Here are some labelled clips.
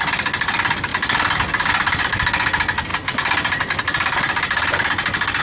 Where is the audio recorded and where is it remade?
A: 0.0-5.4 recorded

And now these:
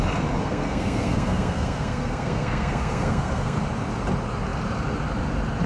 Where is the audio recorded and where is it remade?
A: 0.0-0.4 recorded; 0.4-3.6 remade; 3.6-5.7 recorded

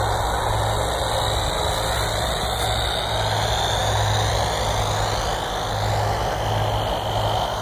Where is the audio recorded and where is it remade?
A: 0.0-7.6 recorded

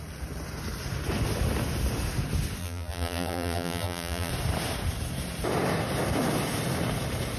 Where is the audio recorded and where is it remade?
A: 0.0-2.6 recorded; 2.6-4.3 remade; 4.3-7.4 recorded

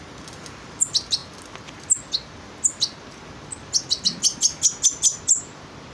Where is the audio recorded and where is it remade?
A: 0.0-5.9 recorded

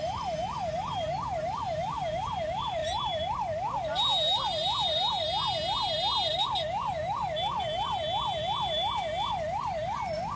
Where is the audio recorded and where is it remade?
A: 0.0-10.4 recorded

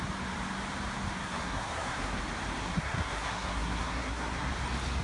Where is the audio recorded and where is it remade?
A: 0.0-1.2 recorded; 1.2-2.2 remade; 2.2-2.6 recorded; 2.6-4.5 remade; 4.5-5.0 recorded